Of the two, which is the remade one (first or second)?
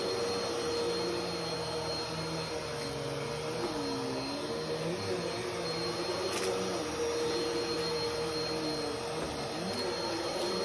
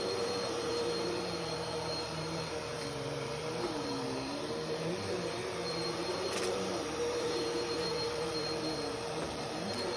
second